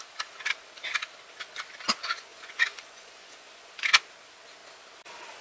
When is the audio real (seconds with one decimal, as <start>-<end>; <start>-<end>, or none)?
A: 0.0-2.3; 3.7-5.4